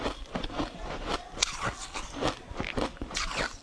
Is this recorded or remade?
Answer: recorded